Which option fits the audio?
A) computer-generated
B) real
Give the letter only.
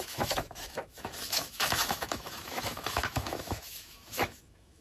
A